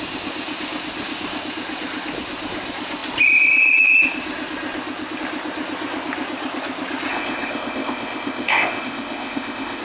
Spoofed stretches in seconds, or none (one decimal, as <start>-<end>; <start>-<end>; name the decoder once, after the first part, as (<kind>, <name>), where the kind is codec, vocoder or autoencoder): 7.1-9.8 (codec, ZipCodec)